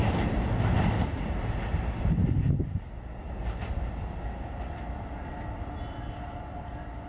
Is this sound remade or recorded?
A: recorded